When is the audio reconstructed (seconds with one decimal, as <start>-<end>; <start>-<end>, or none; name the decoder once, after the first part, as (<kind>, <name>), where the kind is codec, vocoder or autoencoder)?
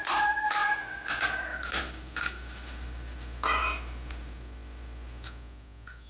none